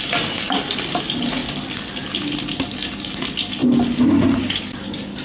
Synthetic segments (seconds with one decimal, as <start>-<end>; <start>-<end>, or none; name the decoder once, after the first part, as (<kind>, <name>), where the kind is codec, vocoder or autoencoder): none